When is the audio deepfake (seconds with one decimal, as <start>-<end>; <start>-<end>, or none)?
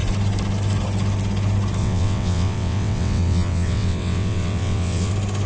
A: 1.8-5.1